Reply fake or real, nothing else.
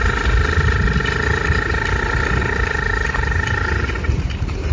real